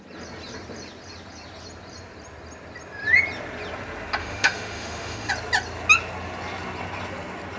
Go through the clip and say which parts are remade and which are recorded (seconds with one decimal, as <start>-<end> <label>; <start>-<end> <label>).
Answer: 0.0-4.2 recorded; 4.2-5.3 remade; 5.3-7.6 recorded